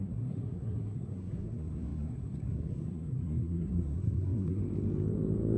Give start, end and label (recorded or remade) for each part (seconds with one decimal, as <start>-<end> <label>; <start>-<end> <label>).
0.0-4.6 remade; 4.6-5.6 recorded